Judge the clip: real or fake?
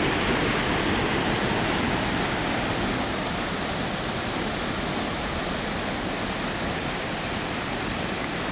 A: real